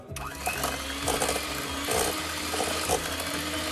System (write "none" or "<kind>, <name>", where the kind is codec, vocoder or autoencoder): none